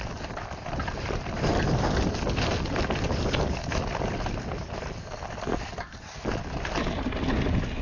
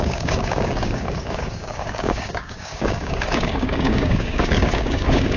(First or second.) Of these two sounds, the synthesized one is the second